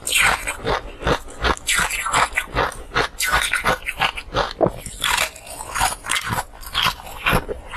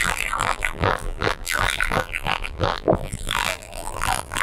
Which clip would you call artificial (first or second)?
second